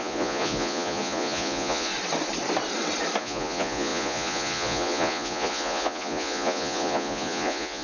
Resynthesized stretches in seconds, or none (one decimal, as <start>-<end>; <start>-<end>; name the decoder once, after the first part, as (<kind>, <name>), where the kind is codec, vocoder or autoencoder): 0.0-1.9 (vocoder, Vocos); 3.2-7.8